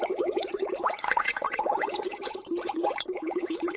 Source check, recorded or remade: remade